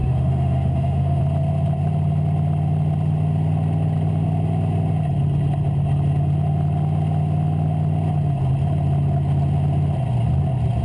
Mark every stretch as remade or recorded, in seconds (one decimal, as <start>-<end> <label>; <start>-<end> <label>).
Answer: 0.0-1.2 remade; 1.2-10.8 recorded